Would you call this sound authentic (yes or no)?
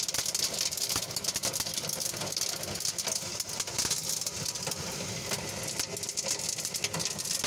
yes